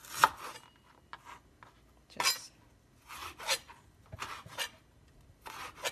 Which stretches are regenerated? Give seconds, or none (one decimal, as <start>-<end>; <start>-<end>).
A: none